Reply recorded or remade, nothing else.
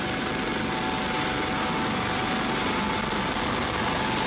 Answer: recorded